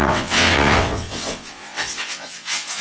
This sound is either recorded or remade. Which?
remade